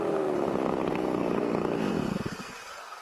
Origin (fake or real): fake